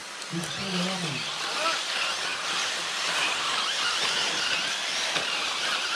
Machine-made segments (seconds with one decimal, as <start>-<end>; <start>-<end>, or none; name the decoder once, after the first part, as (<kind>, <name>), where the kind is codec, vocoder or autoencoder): 2.3-3.0 (vocoder, BigVGAN v2)